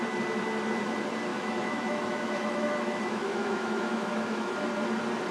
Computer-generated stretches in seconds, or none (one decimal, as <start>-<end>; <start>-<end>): 1.3-4.5